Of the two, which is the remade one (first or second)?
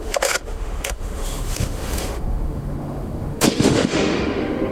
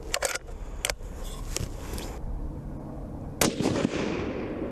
first